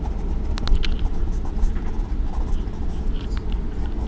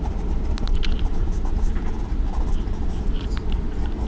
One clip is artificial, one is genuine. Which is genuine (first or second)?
first